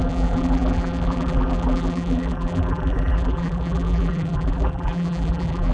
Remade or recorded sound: remade